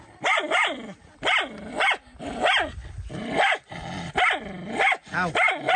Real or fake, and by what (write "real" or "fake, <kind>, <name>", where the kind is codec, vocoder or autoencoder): real